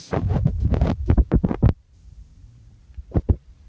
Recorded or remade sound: remade